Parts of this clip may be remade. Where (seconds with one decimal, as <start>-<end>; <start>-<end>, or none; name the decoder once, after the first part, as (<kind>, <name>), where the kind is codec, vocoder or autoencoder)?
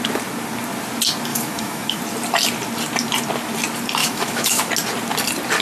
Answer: 1.3-2.0 (autoencoder, DAC-VAE); 4.0-4.7